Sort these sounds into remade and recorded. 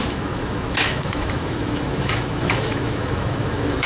remade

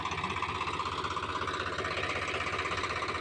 recorded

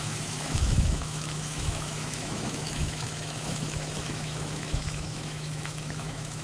remade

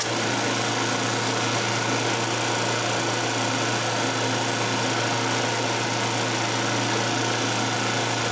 recorded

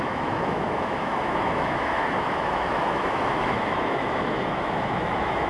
remade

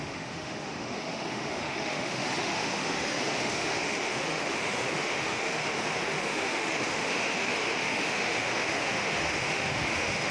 remade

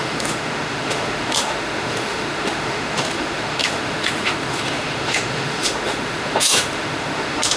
remade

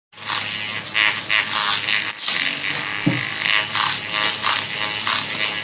recorded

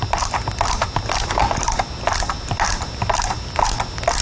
recorded